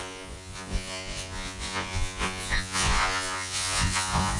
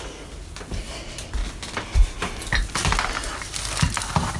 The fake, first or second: first